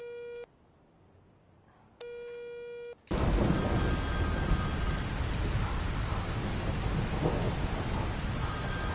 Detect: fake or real real